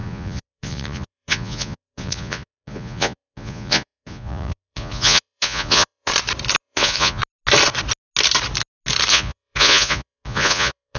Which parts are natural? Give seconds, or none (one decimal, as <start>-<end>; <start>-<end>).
6.1-6.6; 7.2-9.1

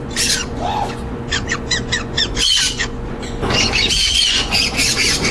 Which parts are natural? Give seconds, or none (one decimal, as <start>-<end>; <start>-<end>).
none

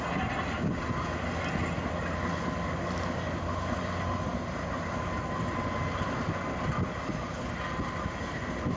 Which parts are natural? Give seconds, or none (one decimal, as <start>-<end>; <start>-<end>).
0.0-8.8

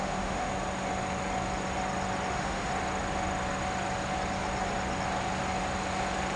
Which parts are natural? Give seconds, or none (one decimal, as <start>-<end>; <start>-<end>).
0.5-2.3; 2.7-6.4

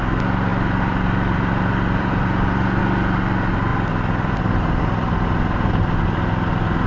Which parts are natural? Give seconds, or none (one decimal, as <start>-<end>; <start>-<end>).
0.0-0.5; 2.8-3.7; 6.0-6.9